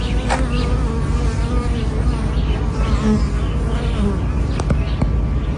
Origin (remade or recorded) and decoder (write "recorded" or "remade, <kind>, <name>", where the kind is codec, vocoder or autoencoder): recorded